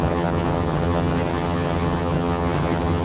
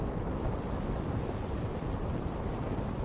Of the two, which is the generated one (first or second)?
first